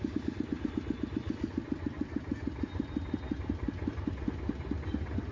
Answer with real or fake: real